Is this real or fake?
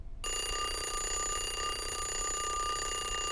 real